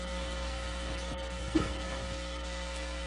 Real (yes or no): no